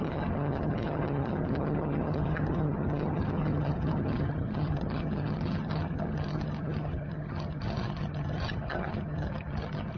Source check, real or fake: fake